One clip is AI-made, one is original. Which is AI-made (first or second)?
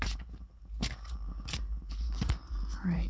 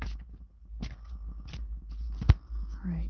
first